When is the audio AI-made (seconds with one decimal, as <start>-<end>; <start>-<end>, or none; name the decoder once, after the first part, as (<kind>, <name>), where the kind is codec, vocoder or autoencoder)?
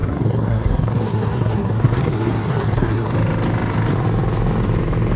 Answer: 0.0-3.1 (codec, SNAC)